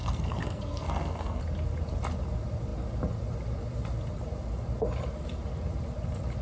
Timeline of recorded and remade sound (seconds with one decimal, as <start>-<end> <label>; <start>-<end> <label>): 0.0-1.4 remade; 1.4-6.4 recorded

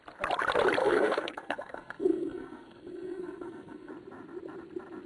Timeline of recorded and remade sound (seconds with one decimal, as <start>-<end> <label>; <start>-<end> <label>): 0.0-0.8 recorded; 0.8-3.9 remade; 3.9-5.1 recorded